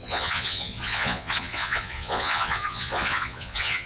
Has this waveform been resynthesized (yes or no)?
yes